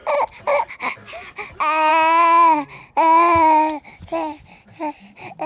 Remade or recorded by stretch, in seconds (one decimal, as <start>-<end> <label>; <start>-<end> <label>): 0.0-5.5 recorded